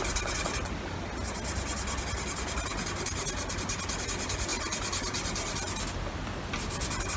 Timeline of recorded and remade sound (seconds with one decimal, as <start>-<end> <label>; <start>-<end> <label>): 0.0-4.5 recorded; 4.5-5.7 remade; 5.7-7.2 recorded